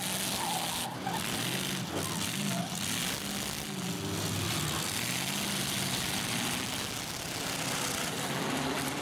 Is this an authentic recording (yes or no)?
yes